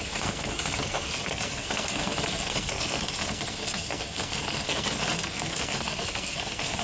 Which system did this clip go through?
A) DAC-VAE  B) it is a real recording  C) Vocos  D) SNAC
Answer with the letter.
D